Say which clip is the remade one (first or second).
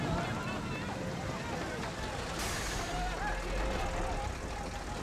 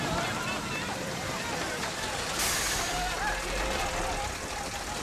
second